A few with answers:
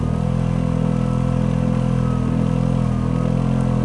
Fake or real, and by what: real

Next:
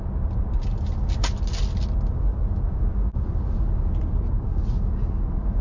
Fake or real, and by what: real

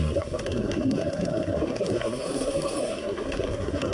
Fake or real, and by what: fake, codec, SNAC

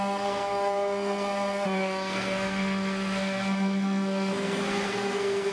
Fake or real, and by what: fake, codec, SNAC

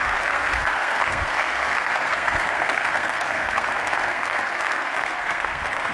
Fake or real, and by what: fake, codec, SNAC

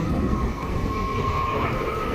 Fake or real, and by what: fake, codec, SNAC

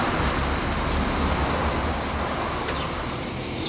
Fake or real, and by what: real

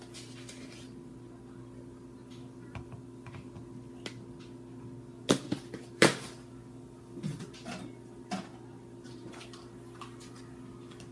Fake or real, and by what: real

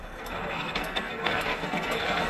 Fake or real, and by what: fake, codec, SNAC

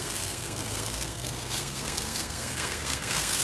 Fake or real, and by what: fake, codec, SNAC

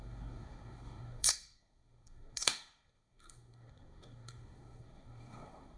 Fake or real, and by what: fake, codec, SNAC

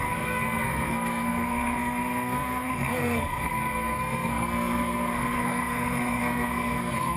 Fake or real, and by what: fake, codec, SNAC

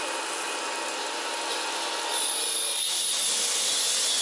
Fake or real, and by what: real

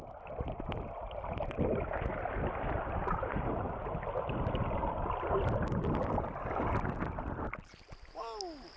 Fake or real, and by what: real